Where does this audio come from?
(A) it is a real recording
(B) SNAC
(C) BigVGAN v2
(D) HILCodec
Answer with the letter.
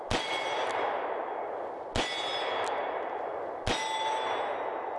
A